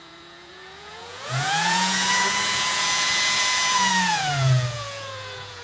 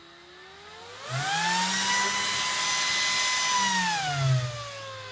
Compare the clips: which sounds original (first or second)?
second